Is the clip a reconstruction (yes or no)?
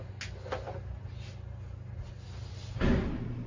no